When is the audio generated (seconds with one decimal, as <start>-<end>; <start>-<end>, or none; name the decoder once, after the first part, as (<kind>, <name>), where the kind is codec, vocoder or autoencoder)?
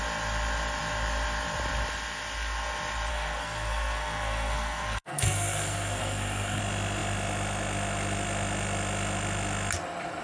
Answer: 3.1-6.6 (codec, SNAC)